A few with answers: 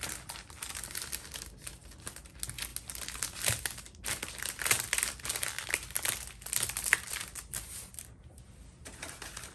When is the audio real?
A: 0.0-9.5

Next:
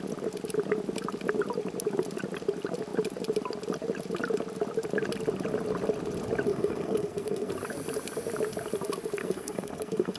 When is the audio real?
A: 0.0-6.5; 7.5-9.2

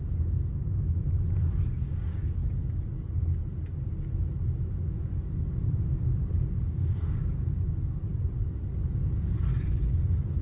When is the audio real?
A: 1.0-1.8; 2.4-4.7; 8.0-10.4